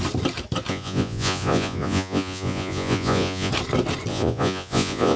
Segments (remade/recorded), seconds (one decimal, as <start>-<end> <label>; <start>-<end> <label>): 0.0-0.7 recorded; 0.7-3.5 remade; 3.5-4.1 recorded; 4.1-5.2 remade